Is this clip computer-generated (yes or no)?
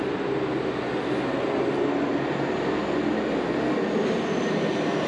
no